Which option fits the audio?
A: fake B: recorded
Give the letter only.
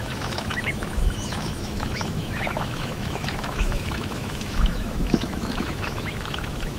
A